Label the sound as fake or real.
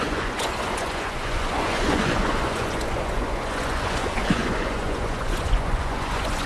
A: fake